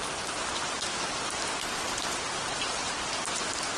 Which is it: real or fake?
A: real